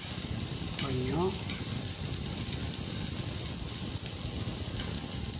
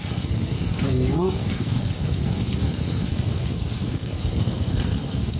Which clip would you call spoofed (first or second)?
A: second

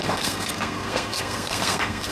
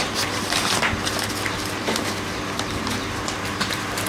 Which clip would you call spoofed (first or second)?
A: first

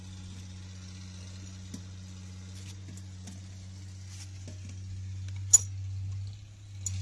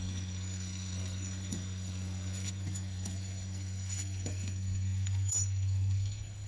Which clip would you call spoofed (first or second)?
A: second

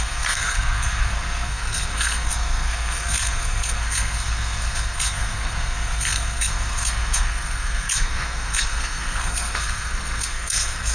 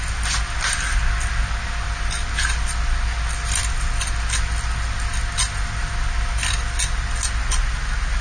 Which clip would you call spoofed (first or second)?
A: first